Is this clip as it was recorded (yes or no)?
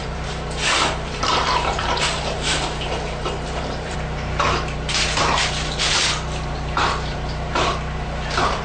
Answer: no